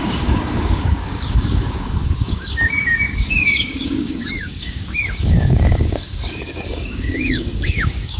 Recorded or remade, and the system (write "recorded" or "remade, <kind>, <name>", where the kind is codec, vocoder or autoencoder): remade, codec, DAC